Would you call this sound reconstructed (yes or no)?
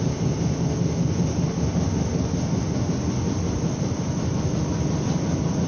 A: no